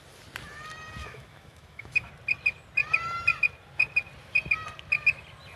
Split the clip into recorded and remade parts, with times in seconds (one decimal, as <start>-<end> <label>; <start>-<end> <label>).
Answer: 0.0-1.0 recorded; 1.0-2.1 remade; 2.1-5.6 recorded